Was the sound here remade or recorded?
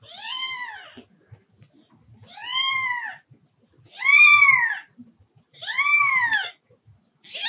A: recorded